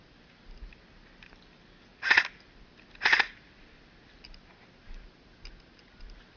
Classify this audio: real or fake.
real